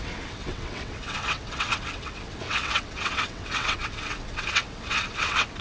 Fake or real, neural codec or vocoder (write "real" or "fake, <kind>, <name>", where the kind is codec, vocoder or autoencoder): fake, vocoder, WaveNeXt